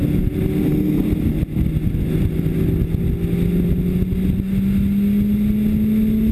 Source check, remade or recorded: recorded